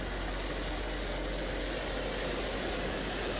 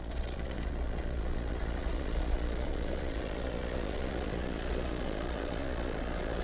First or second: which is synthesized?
second